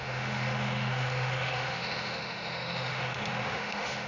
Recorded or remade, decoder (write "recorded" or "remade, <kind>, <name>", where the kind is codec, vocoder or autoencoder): remade, autoencoder, DAC-VAE